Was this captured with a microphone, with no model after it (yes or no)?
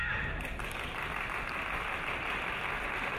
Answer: yes